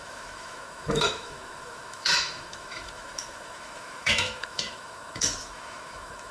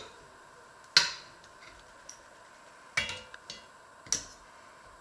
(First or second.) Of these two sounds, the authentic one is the second